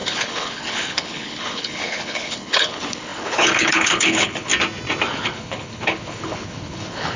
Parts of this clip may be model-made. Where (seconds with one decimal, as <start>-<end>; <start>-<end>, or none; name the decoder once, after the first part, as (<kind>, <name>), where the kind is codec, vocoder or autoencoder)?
0.0-4.5 (codec, HILCodec); 5.1-7.2